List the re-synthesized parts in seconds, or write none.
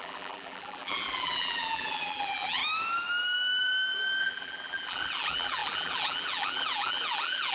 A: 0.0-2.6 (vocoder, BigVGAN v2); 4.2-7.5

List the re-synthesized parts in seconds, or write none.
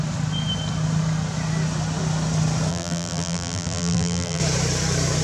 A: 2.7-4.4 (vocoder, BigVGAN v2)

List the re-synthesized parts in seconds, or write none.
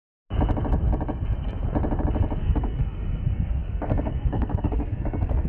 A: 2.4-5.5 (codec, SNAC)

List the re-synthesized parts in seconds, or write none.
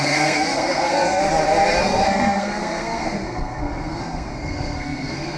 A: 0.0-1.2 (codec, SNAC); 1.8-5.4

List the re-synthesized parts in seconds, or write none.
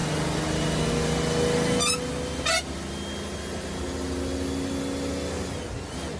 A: none